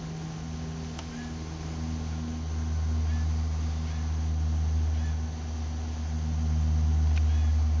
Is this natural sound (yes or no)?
yes